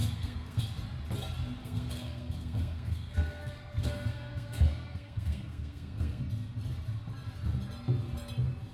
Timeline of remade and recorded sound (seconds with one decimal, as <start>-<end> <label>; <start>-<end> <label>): 0.0-0.6 remade; 0.6-1.6 recorded; 1.6-6.2 remade; 6.2-8.7 recorded